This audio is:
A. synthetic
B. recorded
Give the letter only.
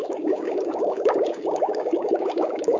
A